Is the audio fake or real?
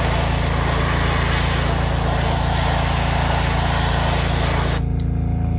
real